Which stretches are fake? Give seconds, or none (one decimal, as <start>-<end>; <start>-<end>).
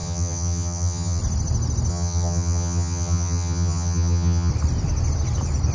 0.0-1.2; 1.9-4.5